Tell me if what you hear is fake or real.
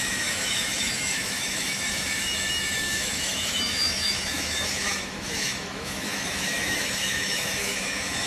fake